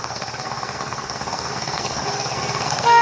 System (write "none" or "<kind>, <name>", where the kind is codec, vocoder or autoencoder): codec, SNAC